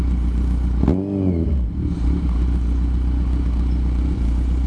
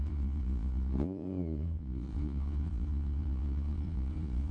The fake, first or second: second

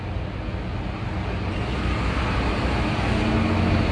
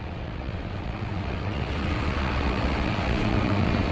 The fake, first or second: second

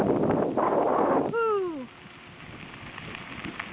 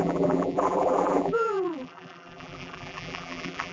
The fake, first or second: second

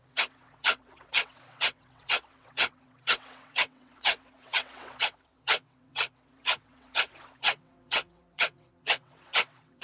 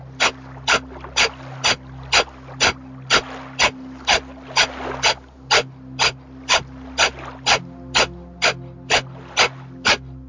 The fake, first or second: first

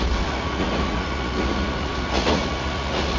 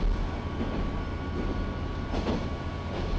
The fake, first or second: first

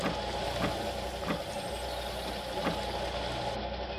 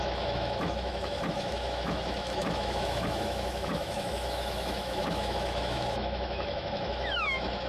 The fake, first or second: second